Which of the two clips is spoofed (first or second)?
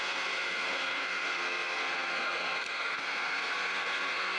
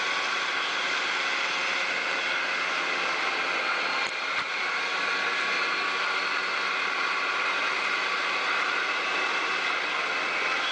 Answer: first